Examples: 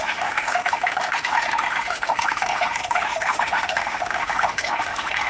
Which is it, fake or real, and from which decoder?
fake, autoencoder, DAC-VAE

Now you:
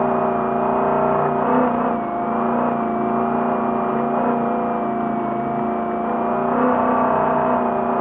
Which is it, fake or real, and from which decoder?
real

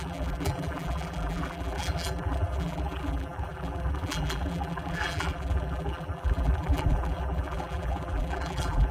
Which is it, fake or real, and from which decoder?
fake, vocoder, BigVGAN v2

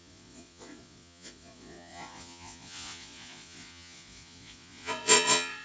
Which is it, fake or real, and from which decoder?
fake, vocoder, Vocos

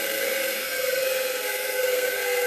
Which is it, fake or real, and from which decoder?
fake, codec, SNAC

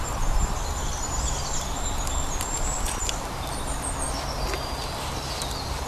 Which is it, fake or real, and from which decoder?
real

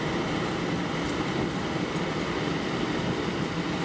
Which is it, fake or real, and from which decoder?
real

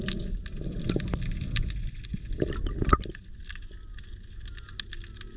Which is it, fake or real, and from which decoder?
real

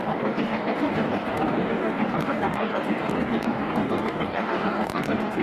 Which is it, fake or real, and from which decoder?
fake, codec, DAC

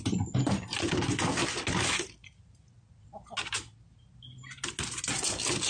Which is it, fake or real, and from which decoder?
real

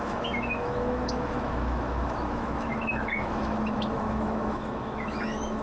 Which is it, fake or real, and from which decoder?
fake, autoencoder, DAC-VAE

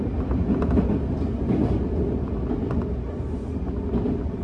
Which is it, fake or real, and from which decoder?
real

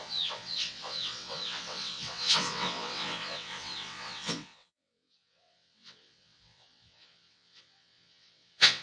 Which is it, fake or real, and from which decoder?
fake, vocoder, WaveNeXt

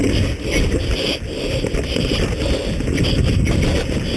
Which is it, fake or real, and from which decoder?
real